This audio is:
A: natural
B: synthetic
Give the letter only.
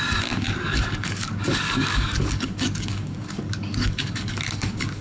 B